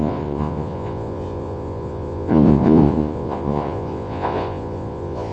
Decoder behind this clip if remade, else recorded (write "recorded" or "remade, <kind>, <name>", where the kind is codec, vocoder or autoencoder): remade, vocoder, Vocos